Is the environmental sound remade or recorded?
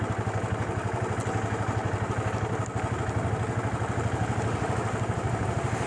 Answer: recorded